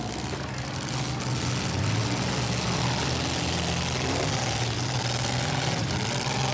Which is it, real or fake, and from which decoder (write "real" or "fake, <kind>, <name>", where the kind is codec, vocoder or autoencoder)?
real